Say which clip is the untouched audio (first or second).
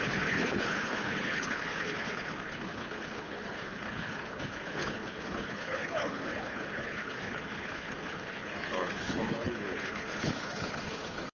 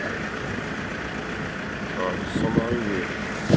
second